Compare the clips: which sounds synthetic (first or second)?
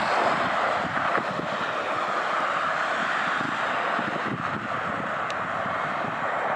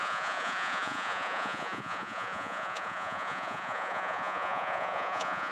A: second